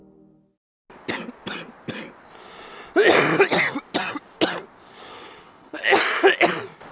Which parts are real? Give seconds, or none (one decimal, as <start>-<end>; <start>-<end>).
0.0-5.1; 6.0-6.9